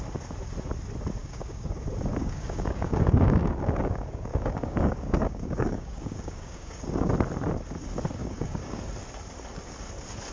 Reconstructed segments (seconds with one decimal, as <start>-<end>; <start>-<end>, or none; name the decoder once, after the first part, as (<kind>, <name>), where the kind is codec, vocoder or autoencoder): 1.2-1.8 (codec, DAC); 2.2-7.1; 8.2-8.8